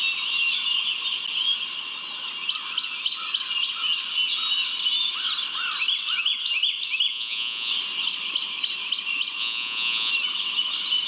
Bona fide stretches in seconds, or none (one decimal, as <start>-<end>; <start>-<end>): 0.0-7.1; 7.7-9.4; 10.1-11.1